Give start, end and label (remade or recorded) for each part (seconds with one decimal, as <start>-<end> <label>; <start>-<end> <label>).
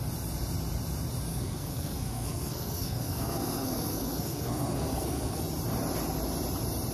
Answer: 0.0-1.3 recorded; 1.3-5.4 remade; 5.4-6.9 recorded